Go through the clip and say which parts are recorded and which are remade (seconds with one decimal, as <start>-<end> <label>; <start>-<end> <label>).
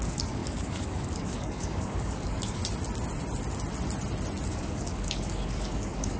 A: 0.0-2.6 remade; 2.6-4.5 recorded; 4.5-6.2 remade